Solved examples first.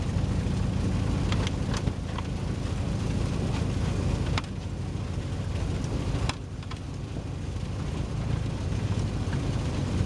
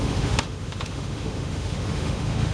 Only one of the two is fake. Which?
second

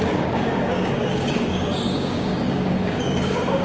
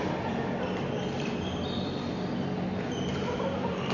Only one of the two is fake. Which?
first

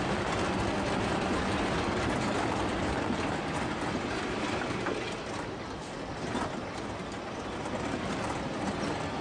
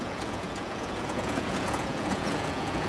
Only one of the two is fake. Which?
second